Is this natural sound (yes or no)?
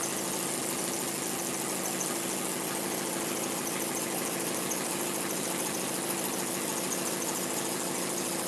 yes